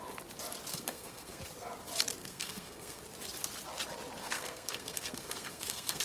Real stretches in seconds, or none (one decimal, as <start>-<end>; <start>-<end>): 0.0-0.7; 1.4-2.2; 3.0-4.2